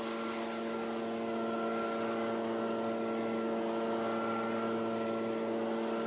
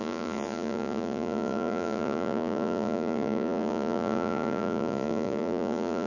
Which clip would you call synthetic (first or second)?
second